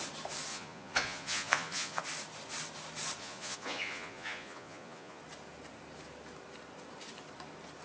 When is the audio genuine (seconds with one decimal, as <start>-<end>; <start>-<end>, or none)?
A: 0.0-0.5; 2.0-3.2; 5.2-7.8